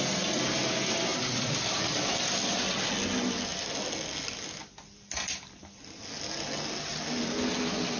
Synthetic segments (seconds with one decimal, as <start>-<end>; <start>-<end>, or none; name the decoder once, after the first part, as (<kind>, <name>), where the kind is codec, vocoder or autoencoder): none